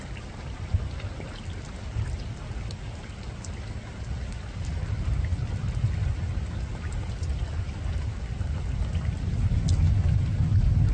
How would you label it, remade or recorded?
recorded